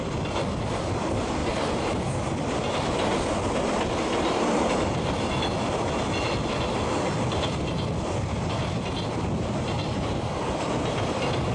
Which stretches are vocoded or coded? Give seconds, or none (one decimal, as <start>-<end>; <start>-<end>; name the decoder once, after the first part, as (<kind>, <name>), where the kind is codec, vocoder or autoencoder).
none